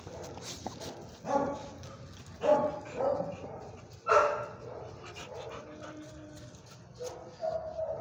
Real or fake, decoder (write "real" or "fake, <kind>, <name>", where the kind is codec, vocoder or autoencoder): real